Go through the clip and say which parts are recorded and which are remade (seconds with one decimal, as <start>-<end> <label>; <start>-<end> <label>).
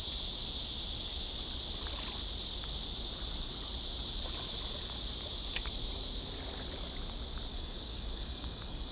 0.0-7.5 recorded; 7.5-8.9 remade